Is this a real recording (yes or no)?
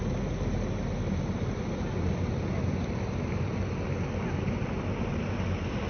yes